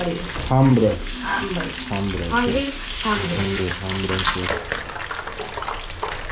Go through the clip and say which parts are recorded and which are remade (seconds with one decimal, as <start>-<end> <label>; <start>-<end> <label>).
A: 0.0-0.7 recorded; 0.7-1.5 remade; 1.5-2.5 recorded; 2.5-3.7 remade; 3.7-6.3 recorded